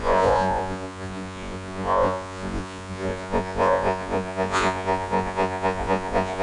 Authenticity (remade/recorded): remade